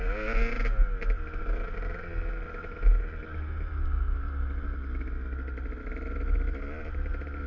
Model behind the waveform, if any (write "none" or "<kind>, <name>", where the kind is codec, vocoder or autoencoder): none